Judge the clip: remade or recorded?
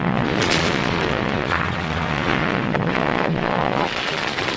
remade